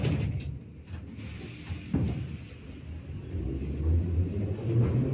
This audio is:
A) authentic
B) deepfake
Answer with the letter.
A